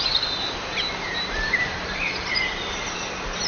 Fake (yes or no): yes